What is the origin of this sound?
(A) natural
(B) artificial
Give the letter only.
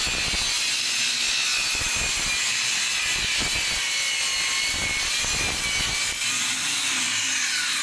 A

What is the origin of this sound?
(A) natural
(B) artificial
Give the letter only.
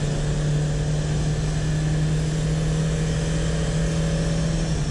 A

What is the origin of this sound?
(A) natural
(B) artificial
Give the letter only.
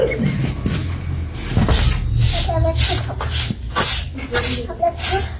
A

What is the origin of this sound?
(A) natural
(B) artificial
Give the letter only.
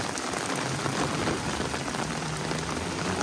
B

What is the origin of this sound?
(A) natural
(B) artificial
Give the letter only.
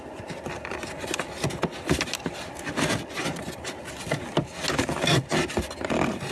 A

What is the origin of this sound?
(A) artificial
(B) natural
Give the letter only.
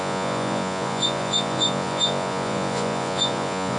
A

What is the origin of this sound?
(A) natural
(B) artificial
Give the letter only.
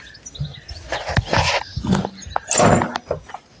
A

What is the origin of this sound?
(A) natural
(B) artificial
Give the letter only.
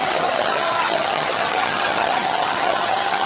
B